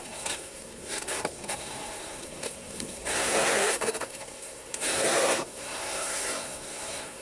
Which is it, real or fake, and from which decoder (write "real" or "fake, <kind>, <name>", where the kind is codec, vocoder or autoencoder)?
fake, codec, SNAC